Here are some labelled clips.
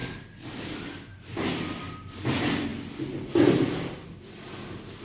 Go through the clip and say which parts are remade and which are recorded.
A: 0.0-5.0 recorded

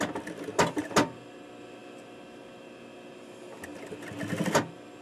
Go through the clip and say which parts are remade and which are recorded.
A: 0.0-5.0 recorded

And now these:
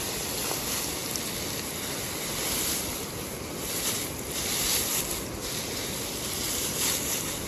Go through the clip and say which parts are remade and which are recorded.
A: 0.0-7.5 recorded

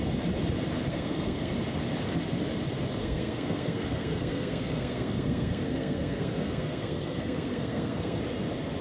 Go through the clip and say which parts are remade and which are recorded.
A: 0.0-0.9 recorded; 0.9-1.5 remade; 1.5-3.0 recorded; 3.0-8.2 remade; 8.2-8.8 recorded